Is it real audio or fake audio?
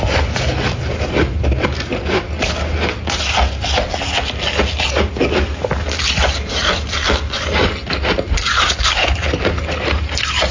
real